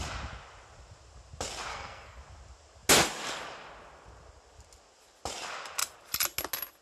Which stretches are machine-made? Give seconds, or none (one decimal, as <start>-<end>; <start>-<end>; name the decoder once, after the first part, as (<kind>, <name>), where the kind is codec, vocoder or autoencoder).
1.7-2.2 (codec, SNAC)